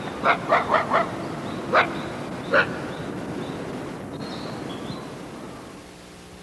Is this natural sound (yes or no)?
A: yes